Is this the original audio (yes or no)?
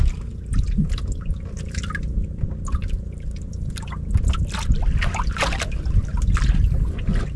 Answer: yes